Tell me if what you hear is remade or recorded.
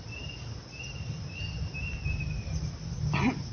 recorded